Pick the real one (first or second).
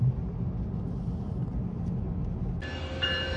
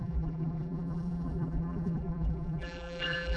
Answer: first